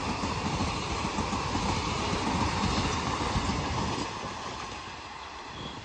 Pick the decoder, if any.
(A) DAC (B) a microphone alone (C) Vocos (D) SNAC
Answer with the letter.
B